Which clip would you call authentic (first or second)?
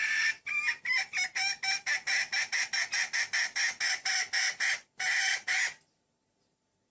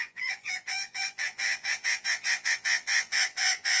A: first